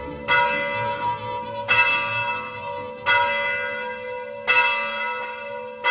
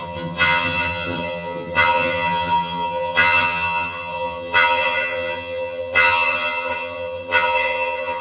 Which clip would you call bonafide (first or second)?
first